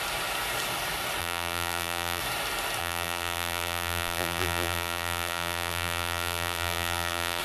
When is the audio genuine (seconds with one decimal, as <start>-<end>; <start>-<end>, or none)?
0.0-1.2; 2.2-2.8